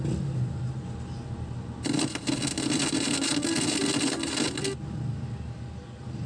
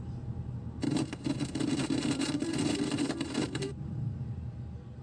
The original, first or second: first